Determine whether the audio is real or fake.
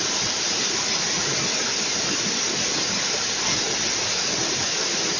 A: real